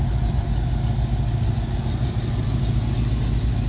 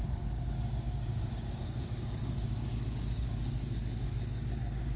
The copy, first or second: second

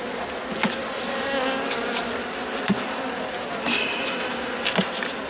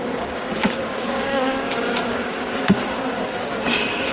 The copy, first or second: second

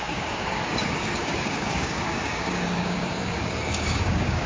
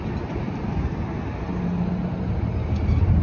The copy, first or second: first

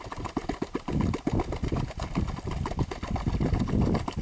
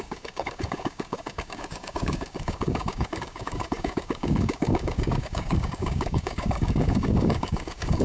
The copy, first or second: second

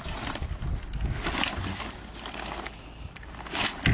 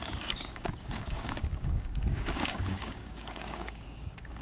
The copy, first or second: second